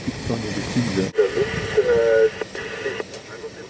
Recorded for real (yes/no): yes